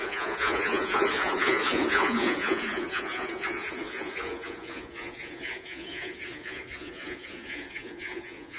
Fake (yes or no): yes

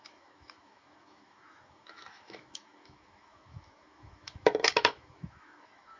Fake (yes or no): yes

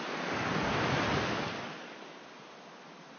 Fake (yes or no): no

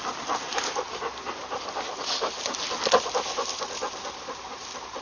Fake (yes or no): no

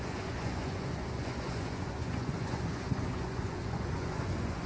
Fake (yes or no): yes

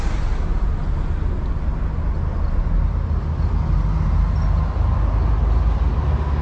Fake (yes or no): no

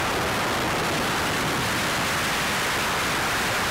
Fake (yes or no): no